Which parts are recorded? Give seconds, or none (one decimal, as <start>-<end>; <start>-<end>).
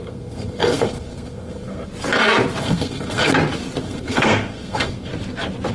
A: 1.9-2.6; 3.3-3.8; 5.1-5.7